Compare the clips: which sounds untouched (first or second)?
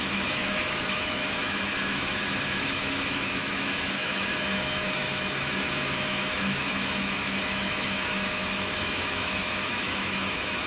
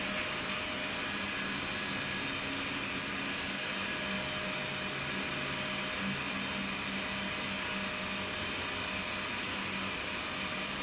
second